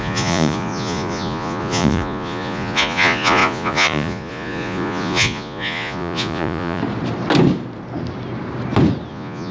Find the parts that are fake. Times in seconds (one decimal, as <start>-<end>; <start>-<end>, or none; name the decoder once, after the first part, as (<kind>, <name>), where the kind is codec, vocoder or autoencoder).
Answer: 0.0-6.8 (vocoder, Vocos); 9.1-9.5

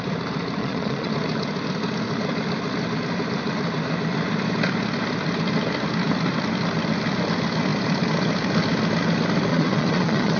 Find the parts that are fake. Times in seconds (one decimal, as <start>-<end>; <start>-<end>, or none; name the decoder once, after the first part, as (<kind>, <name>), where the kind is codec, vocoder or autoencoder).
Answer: 0.6-1.1 (vocoder, Vocos); 9.5-10.4

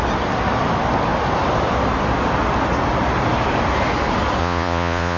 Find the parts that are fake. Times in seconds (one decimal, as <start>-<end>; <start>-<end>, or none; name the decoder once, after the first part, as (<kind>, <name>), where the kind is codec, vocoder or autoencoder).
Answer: 4.4-5.2 (vocoder, Vocos)

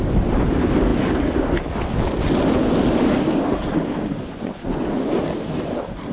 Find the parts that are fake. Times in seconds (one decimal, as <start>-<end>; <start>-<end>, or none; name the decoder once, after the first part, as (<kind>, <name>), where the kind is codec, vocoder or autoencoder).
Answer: 4.2-5.2 (vocoder, Vocos)

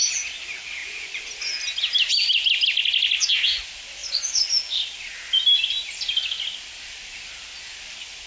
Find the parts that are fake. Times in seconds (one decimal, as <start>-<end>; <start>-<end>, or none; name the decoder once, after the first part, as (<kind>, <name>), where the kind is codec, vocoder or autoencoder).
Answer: 0.8-1.3 (vocoder, Vocos)

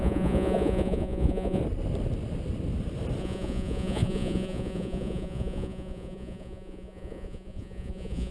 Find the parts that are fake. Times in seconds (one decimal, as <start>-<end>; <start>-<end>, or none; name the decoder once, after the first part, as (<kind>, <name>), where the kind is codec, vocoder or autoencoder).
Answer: 0.0-1.6 (vocoder, Vocos); 3.2-8.3